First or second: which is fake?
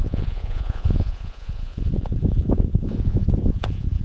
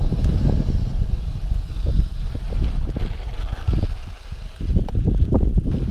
first